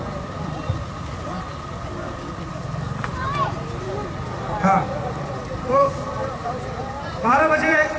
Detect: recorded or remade remade